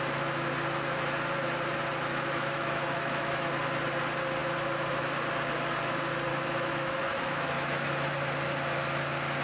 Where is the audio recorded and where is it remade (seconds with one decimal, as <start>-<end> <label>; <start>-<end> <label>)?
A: 0.0-2.1 recorded; 2.1-3.5 remade; 3.5-6.3 recorded; 6.3-8.1 remade; 8.1-9.4 recorded